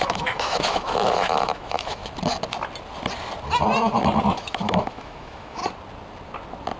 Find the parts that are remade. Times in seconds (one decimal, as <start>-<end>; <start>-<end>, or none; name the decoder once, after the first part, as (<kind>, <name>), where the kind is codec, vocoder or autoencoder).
0.0-2.0 (autoencoder, DAC-VAE); 4.2-5.6